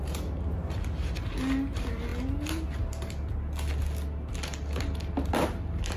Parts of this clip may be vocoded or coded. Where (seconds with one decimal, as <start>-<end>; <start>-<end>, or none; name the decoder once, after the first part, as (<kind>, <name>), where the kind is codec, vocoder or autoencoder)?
none